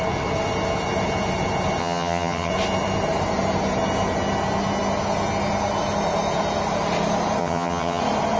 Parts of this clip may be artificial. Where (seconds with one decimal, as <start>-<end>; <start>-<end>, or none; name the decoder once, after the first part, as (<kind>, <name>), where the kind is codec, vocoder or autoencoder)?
1.8-2.5 (vocoder, HiFi-GAN); 7.4-8.0